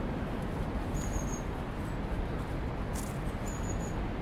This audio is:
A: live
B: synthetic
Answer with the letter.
A